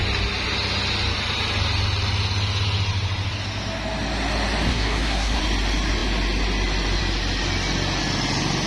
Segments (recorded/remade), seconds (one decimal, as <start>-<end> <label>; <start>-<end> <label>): 0.0-4.7 recorded; 4.7-5.4 remade; 5.4-8.7 recorded